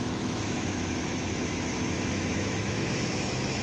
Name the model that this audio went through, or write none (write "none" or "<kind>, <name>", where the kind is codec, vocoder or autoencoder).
autoencoder, DAC-VAE